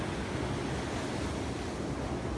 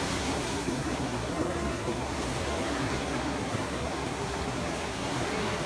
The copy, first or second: second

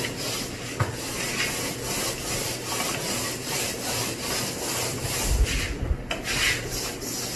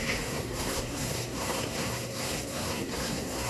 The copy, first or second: second